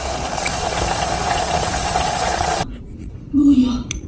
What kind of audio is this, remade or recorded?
remade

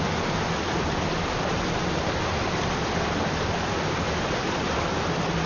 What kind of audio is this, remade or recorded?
recorded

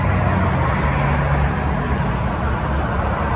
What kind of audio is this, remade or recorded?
recorded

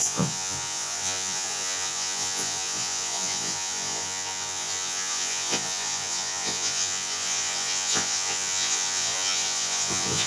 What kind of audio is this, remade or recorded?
remade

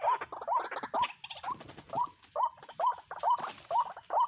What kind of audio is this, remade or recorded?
recorded